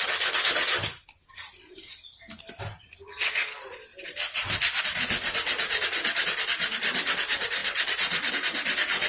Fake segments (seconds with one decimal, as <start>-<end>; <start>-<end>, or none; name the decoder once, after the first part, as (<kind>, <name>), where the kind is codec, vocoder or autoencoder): none